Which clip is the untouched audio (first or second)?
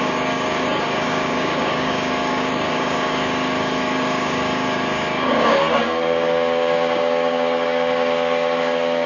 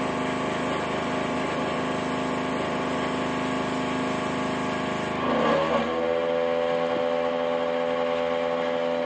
second